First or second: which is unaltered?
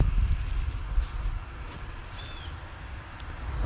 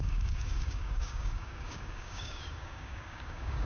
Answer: first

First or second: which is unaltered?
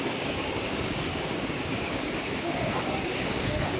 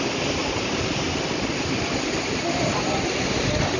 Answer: second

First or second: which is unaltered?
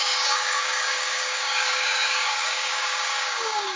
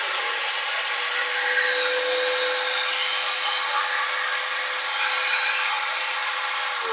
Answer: second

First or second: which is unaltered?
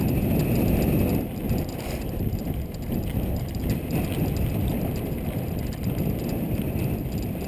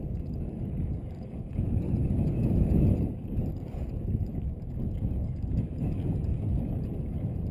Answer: first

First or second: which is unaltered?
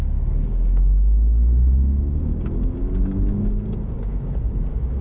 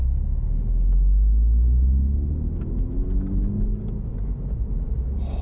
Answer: second